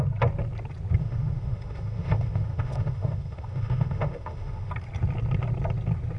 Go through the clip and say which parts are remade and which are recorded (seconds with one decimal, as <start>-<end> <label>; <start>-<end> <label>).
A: 0.0-1.0 recorded; 1.0-4.7 remade; 4.7-6.2 recorded